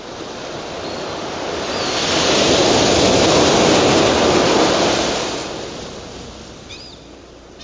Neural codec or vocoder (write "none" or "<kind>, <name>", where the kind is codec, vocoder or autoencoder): none